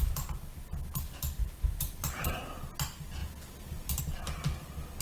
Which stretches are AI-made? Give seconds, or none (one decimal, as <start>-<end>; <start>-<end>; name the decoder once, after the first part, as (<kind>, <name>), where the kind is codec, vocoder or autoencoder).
1.4-2.4 (vocoder, BigVGAN v2)